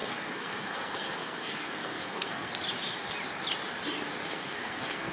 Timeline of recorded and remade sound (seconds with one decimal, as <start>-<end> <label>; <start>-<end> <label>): 0.0-2.5 remade; 2.5-4.2 recorded; 4.2-5.1 remade